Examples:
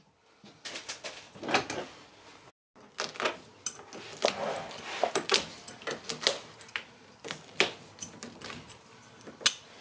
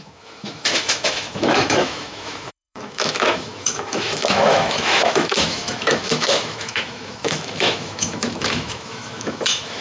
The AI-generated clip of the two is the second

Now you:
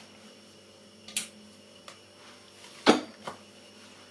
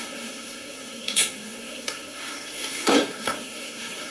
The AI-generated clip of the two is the second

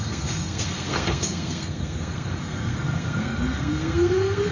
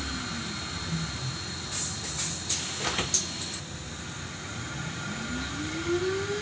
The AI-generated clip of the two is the first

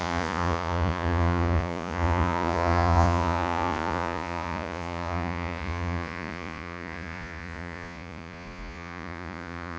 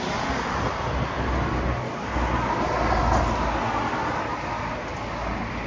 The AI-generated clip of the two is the first